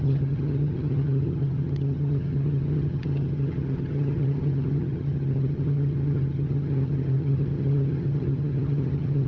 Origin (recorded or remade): remade